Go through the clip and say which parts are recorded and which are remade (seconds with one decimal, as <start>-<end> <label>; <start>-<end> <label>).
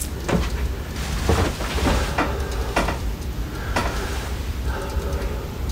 0.0-3.0 recorded; 3.0-5.7 remade